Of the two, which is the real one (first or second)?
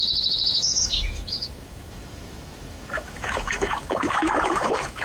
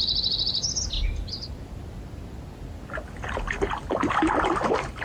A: second